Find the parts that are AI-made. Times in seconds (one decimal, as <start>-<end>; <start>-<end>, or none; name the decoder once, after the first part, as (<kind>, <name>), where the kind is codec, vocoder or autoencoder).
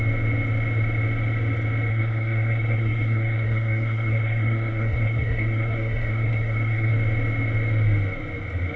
1.9-6.9 (codec, SNAC)